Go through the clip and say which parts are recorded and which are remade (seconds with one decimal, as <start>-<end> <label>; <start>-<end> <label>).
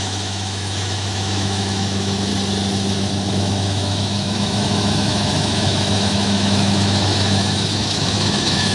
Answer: 0.0-2.3 remade; 2.3-3.3 recorded; 3.3-8.7 remade